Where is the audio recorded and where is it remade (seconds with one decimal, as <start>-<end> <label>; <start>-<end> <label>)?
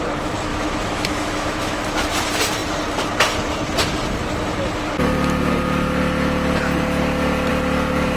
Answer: 0.0-0.5 recorded; 0.5-1.8 remade; 1.8-8.2 recorded